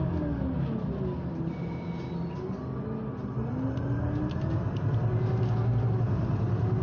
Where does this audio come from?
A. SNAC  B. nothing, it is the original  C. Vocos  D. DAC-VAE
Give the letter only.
B